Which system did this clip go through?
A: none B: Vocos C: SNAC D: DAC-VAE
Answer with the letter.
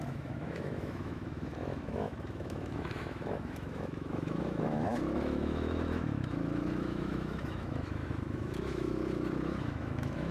D